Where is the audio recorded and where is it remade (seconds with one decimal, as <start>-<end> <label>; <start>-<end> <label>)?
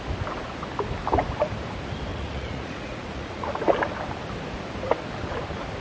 0.0-2.1 recorded; 2.1-3.5 remade; 3.5-5.8 recorded